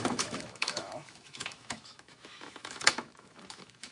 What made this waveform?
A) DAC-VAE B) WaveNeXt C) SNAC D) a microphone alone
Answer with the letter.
A